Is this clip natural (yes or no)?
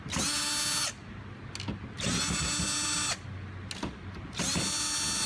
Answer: yes